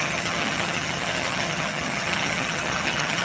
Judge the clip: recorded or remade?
remade